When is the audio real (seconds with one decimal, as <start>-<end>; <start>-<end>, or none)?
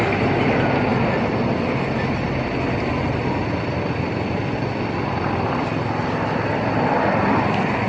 0.0-7.9